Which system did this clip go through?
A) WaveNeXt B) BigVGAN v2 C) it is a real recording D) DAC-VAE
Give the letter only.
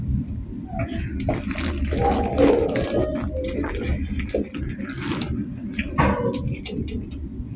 C